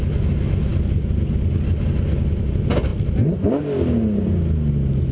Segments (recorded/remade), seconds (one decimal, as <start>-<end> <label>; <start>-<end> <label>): 0.0-5.1 recorded

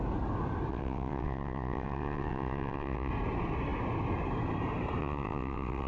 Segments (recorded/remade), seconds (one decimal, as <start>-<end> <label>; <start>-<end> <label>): 0.0-0.7 recorded; 0.7-3.1 remade; 3.1-5.0 recorded; 5.0-5.9 remade

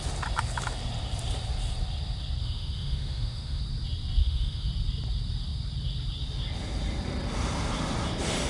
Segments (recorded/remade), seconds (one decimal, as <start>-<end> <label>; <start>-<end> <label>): 0.0-2.4 recorded; 2.4-3.6 remade; 3.6-4.2 recorded; 4.2-4.7 remade; 4.7-8.5 recorded

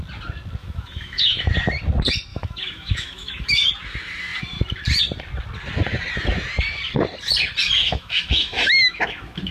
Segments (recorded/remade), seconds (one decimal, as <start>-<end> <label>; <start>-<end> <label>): 0.0-0.6 recorded; 0.6-1.5 remade; 1.5-2.3 recorded; 2.3-3.7 remade; 3.7-7.8 recorded; 7.8-9.5 remade

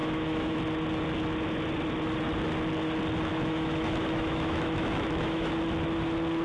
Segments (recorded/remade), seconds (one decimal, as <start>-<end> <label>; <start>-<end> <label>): 0.0-0.6 remade; 0.6-3.3 recorded; 3.3-5.5 remade; 5.5-6.4 recorded

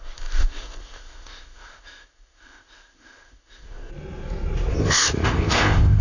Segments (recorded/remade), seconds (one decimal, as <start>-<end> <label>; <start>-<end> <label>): 0.0-3.9 remade; 3.9-4.7 recorded; 4.7-6.0 remade

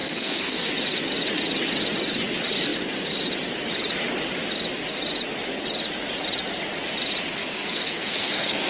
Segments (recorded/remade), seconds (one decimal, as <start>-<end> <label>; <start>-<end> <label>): 0.0-0.7 remade; 0.7-7.4 recorded; 7.4-8.7 remade